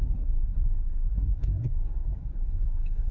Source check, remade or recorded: remade